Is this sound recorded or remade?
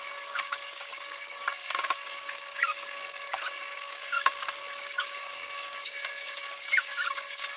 remade